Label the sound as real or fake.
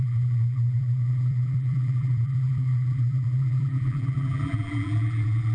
fake